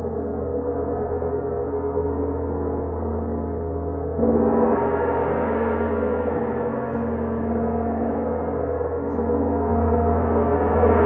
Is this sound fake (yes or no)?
yes